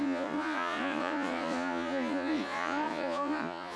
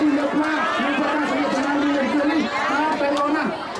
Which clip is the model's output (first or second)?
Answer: first